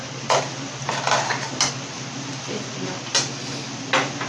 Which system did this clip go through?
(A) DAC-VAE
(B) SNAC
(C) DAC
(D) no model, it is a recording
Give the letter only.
D